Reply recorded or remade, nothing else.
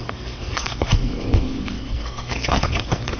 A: remade